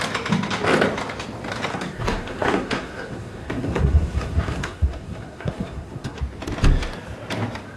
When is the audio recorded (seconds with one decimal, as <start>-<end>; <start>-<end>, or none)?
0.0-1.7; 6.2-7.8